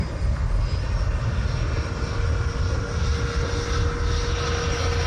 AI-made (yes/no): no